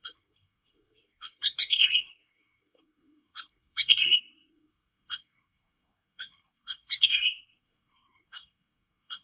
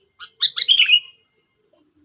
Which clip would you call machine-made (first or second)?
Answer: first